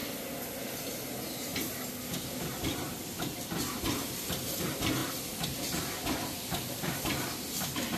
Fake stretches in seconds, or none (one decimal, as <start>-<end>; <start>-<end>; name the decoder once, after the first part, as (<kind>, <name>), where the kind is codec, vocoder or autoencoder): 0.7-1.5 (vocoder, BigVGAN v2); 4.6-8.0